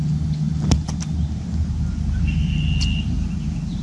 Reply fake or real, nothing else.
real